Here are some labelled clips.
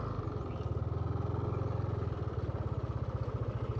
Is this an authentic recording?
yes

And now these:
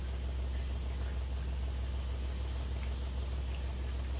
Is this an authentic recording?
yes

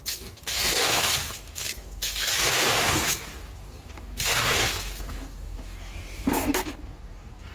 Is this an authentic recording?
no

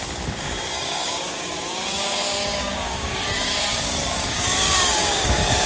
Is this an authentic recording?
no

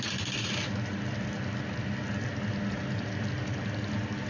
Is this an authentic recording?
yes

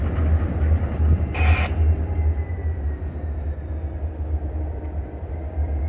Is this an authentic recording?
yes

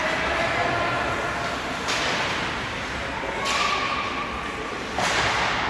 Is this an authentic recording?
yes